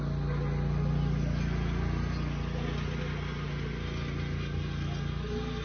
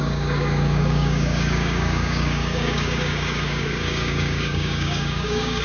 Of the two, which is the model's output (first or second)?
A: second